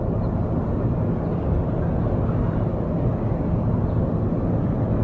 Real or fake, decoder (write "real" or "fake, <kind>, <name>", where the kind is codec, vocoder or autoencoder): real